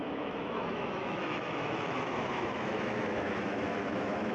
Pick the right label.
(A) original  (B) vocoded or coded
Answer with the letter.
B